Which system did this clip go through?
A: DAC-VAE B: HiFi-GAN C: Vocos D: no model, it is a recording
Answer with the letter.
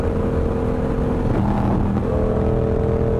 D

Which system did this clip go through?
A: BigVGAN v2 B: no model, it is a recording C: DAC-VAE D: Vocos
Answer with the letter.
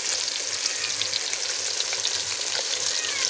B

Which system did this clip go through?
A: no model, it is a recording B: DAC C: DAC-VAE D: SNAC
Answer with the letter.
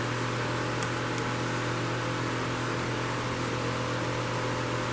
A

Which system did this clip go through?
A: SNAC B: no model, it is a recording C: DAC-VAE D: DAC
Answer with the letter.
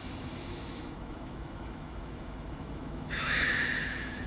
C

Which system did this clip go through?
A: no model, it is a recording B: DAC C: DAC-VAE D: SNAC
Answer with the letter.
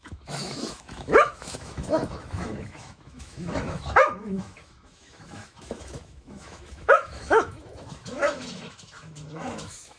C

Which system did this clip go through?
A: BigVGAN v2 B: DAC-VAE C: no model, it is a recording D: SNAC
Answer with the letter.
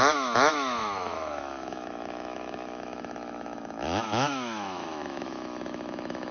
B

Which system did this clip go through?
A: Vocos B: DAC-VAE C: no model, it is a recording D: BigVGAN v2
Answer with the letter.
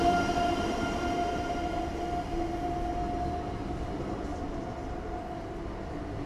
C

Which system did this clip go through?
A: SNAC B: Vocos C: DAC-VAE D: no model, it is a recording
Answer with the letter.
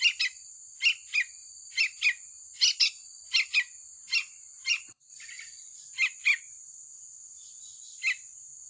D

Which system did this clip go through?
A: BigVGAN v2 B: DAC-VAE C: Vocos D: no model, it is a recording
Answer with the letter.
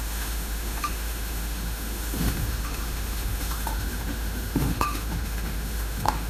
B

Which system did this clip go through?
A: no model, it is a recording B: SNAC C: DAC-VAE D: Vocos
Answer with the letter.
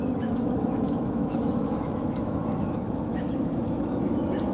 C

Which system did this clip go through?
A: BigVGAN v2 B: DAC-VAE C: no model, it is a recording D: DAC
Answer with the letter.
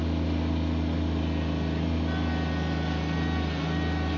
C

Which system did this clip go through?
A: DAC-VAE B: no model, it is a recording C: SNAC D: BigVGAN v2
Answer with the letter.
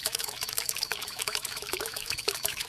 A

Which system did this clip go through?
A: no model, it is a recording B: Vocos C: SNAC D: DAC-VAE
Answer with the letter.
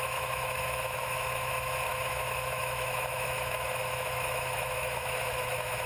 D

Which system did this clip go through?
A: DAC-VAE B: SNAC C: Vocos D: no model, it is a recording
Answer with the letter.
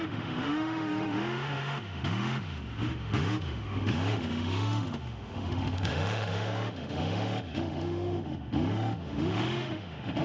A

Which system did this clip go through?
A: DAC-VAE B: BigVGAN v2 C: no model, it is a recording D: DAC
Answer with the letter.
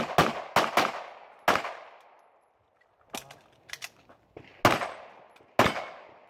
C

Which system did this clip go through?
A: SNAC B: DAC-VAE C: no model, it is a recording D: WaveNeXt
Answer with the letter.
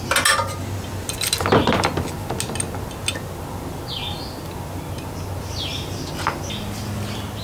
C